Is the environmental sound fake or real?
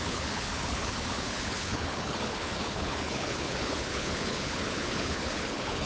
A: fake